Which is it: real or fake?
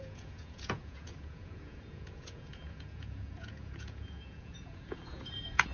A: fake